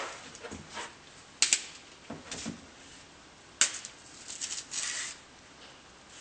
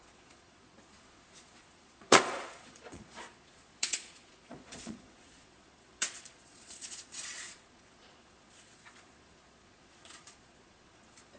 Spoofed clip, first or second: second